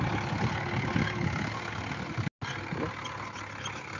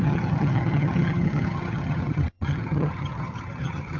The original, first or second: first